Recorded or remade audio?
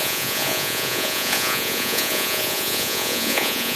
remade